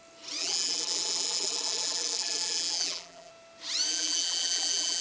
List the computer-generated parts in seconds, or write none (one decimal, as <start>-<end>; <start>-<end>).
0.4-3.3; 3.9-5.0